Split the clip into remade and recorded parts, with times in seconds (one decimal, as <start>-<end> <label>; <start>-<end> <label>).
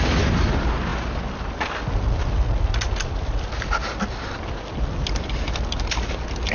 0.0-6.5 remade